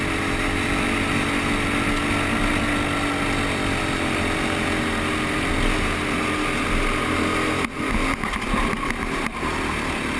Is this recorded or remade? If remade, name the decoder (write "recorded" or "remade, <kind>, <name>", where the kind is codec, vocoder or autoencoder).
recorded